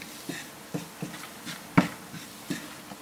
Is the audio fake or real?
real